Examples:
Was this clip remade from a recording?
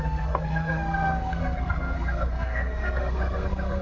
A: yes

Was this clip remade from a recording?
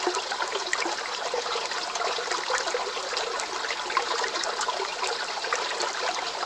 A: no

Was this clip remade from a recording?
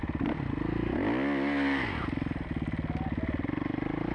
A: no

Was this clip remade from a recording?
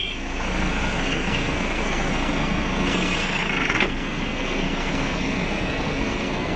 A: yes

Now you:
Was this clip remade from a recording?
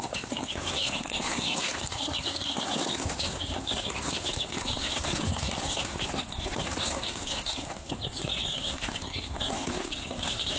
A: yes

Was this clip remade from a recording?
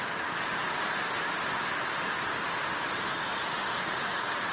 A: no